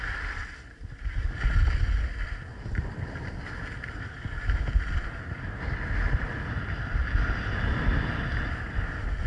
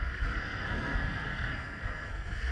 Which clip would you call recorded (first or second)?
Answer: first